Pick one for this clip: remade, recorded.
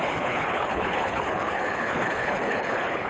remade